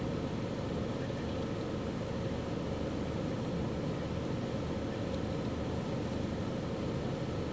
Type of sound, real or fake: real